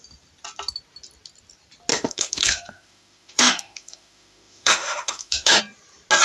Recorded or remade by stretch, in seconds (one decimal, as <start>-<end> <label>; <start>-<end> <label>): 0.0-1.9 recorded; 1.9-5.6 remade; 5.6-6.2 recorded